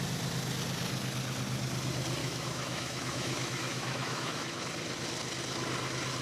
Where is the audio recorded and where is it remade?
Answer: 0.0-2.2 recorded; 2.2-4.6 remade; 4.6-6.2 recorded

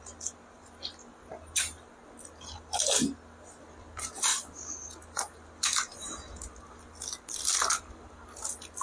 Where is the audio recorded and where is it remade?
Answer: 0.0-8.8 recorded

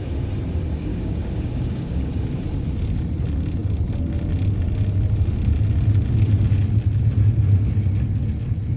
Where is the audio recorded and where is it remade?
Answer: 0.0-0.9 recorded; 0.9-2.1 remade; 2.1-8.8 recorded

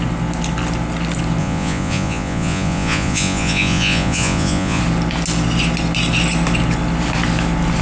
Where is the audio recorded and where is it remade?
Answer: 0.0-1.4 recorded; 1.4-4.8 remade; 4.8-7.8 recorded